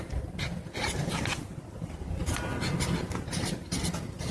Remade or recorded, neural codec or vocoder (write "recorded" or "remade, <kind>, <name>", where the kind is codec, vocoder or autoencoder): recorded